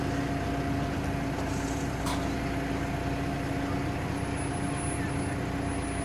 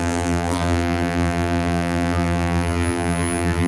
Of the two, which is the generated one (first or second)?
second